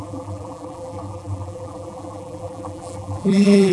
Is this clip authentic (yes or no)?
no